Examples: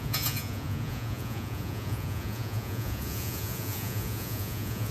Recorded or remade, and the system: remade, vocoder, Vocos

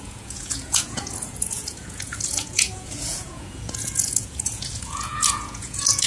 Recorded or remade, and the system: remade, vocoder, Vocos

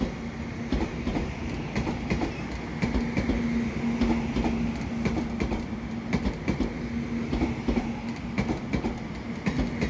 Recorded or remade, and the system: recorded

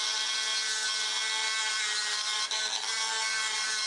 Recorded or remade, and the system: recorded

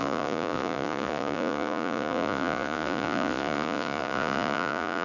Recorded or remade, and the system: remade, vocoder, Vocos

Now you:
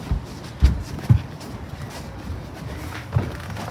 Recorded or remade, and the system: recorded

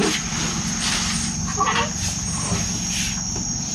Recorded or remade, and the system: recorded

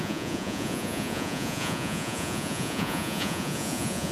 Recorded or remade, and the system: remade, vocoder, Vocos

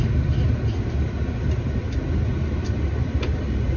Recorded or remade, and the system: recorded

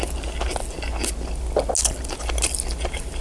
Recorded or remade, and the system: recorded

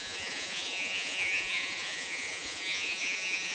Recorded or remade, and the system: remade, vocoder, Vocos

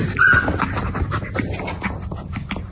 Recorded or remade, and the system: recorded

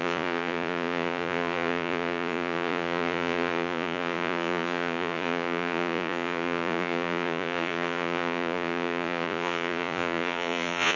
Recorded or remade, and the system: remade, vocoder, Vocos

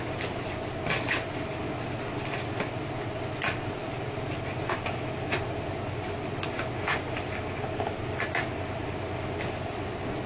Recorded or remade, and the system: recorded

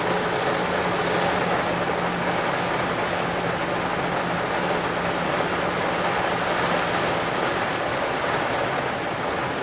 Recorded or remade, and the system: recorded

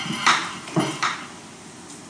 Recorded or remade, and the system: recorded